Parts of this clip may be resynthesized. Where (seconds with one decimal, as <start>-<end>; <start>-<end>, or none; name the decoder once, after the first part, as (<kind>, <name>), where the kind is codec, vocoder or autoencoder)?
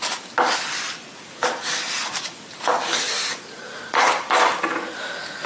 1.4-4.6 (vocoder, BigVGAN v2)